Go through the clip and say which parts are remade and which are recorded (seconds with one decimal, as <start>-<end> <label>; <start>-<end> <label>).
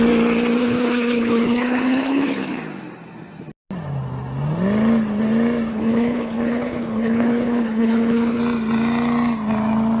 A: 0.0-0.6 recorded; 0.6-2.6 remade; 2.6-5.7 recorded; 5.7-8.4 remade; 8.4-10.0 recorded